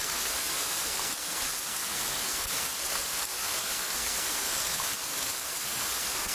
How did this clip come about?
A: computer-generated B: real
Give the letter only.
A